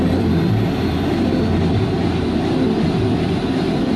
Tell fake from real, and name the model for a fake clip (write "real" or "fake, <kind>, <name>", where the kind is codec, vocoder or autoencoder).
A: fake, vocoder, BigVGAN v2